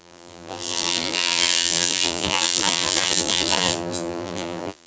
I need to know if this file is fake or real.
fake